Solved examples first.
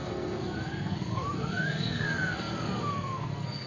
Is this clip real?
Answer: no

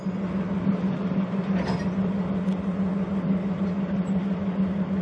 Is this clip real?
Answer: yes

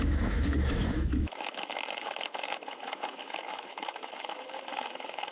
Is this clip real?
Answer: no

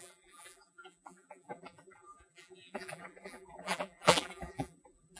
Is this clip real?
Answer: no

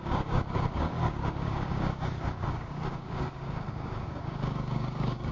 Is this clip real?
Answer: no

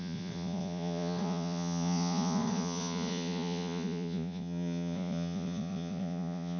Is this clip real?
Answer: no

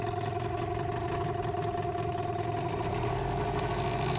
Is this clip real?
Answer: yes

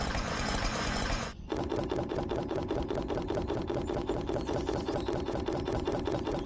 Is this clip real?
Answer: no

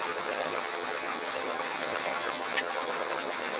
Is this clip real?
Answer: no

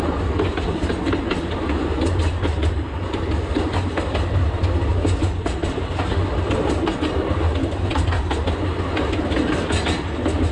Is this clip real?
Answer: yes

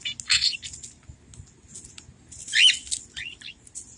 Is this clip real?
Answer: yes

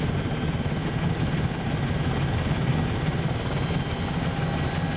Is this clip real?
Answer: yes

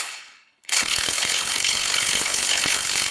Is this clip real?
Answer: no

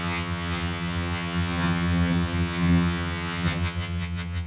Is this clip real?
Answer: no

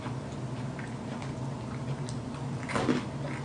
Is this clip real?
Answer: yes